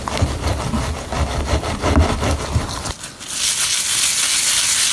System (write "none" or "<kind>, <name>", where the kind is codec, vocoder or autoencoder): none